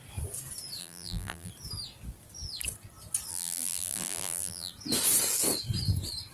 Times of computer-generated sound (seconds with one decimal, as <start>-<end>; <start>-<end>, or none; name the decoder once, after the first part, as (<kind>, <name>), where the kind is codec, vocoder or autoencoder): 0.8-1.5 (vocoder, BigVGAN v2); 3.3-4.7